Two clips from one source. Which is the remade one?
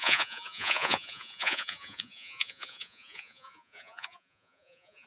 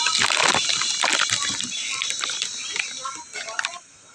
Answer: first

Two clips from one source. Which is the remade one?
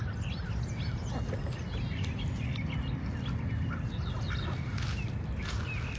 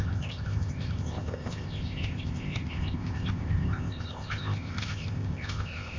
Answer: second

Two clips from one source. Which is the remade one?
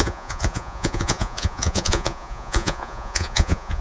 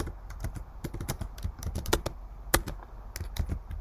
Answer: first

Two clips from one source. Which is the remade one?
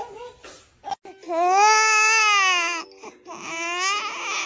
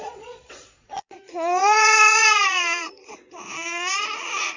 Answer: second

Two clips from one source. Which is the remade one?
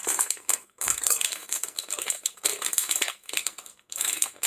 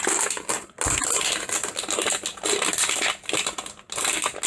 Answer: first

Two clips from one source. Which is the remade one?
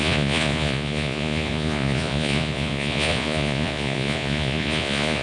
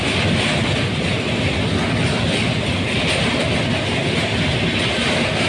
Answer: first